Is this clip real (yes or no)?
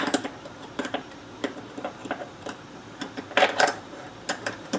no